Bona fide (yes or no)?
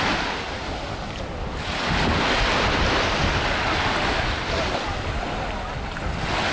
yes